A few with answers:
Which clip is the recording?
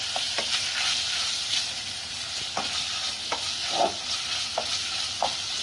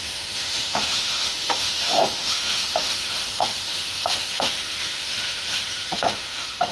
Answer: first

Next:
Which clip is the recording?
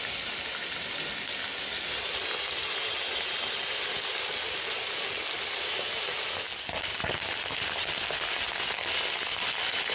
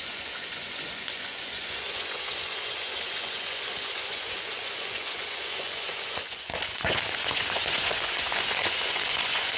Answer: first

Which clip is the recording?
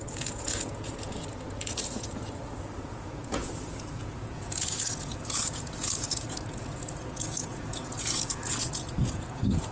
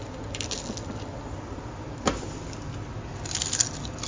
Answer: second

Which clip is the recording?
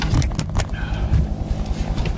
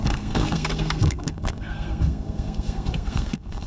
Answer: first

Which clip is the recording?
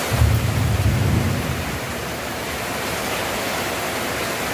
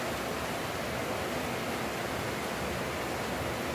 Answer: second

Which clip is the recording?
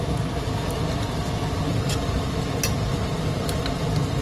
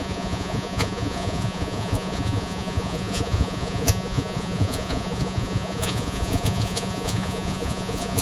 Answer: first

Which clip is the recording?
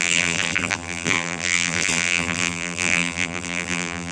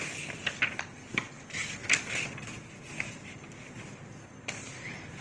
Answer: second